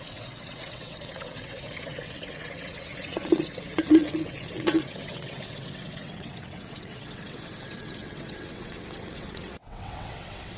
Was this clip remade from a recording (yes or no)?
yes